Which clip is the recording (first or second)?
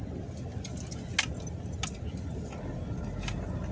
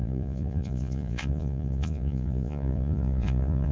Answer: first